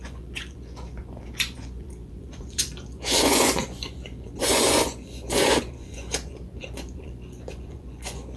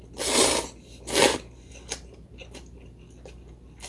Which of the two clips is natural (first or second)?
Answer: second